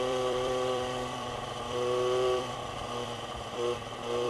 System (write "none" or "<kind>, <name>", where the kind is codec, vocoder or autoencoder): vocoder, BigVGAN v2